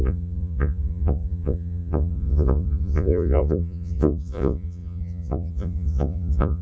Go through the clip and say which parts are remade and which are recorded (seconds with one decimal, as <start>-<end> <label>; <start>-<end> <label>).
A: 0.0-6.6 remade